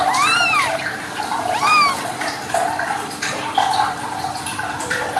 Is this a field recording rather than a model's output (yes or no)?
no